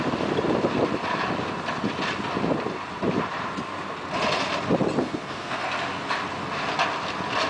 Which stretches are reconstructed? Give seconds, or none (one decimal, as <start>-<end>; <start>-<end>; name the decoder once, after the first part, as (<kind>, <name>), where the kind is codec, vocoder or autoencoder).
5.0-5.6 (codec, SNAC)